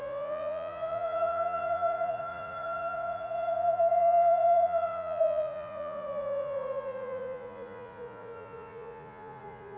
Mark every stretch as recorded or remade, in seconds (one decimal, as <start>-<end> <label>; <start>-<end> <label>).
0.0-9.8 remade